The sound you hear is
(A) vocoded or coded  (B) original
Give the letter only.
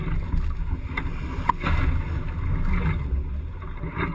B